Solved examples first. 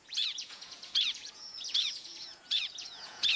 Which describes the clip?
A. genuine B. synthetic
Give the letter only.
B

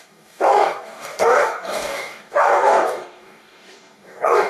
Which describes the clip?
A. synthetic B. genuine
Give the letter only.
A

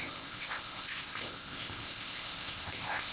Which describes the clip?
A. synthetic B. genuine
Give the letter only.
A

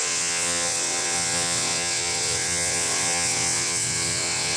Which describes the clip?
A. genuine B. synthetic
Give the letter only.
B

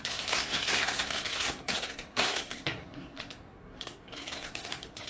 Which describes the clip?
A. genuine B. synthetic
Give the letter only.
B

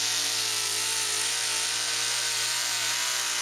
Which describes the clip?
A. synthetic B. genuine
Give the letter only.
B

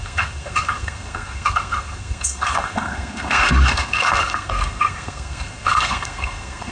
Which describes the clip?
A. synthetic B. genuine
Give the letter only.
A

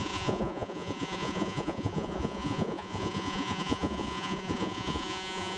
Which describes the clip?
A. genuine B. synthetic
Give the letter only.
B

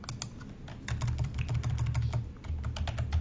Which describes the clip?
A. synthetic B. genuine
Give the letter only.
B